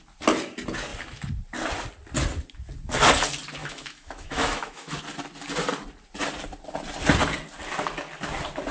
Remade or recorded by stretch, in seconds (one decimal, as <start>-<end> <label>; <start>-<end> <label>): 0.0-3.6 recorded; 3.6-5.0 remade; 5.0-8.7 recorded